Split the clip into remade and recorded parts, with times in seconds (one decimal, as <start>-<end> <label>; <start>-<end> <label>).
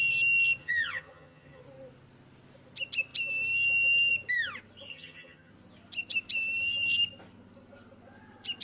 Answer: 0.0-0.6 recorded; 0.6-1.6 remade; 1.6-4.9 recorded; 4.9-5.5 remade; 5.5-8.6 recorded